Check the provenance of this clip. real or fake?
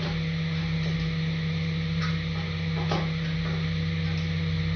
real